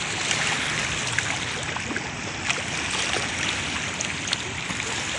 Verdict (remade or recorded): recorded